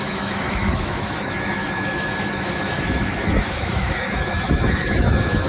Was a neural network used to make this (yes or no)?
yes